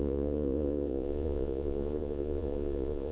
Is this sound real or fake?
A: fake